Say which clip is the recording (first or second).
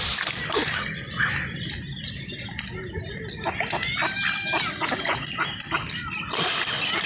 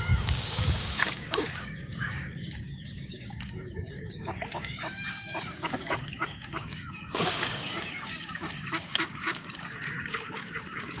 first